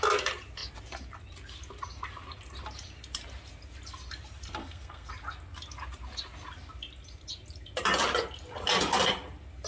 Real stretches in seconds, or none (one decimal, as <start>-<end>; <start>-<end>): 0.0-4.6; 5.1-9.7